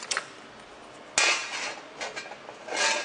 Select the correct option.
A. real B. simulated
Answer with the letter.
A